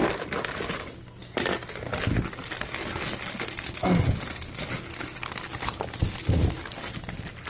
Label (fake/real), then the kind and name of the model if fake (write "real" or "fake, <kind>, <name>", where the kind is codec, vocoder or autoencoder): real